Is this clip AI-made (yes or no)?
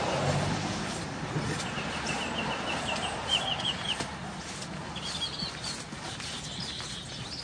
no